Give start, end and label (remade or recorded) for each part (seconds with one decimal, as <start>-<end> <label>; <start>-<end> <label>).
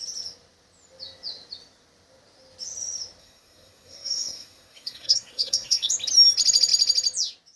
0.0-3.2 recorded; 3.2-5.9 remade; 5.9-7.6 recorded